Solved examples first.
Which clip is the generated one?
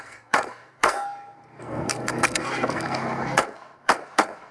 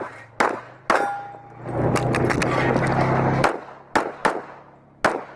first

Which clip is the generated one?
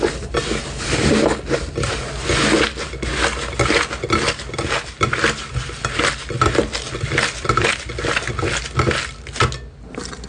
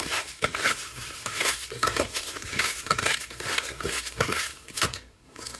second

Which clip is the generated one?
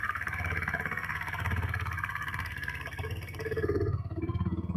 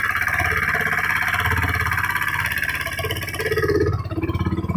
first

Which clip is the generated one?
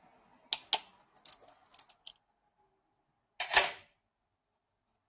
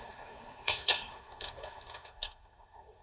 second